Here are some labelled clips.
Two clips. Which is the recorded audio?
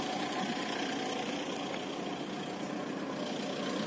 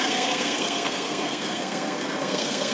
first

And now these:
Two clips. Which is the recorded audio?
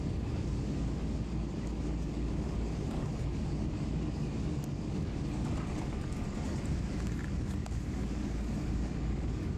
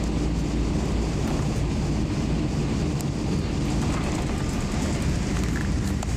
second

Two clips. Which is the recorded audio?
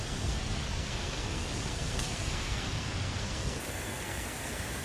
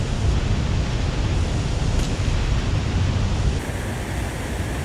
second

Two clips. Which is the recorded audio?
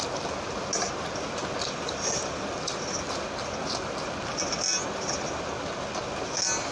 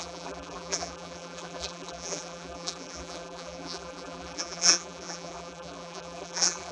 first